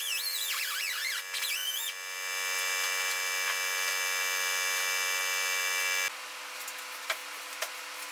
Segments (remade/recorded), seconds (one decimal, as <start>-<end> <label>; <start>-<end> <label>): 0.0-8.1 recorded